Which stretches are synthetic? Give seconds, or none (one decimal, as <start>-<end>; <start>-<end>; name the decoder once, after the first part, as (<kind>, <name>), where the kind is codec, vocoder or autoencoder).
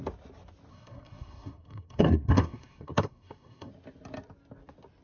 0.7-3.7 (codec, SNAC)